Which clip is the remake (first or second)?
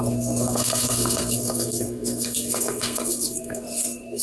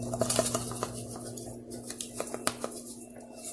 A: first